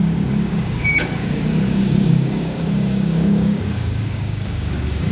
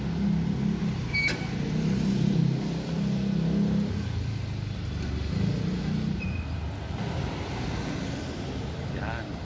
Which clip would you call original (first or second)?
second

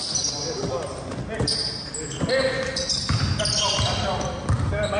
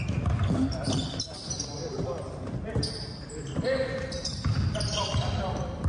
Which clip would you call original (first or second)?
first